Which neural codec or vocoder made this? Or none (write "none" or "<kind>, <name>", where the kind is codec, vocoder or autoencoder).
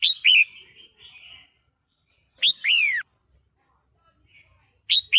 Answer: none